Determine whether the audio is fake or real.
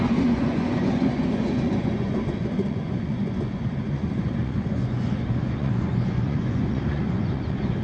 fake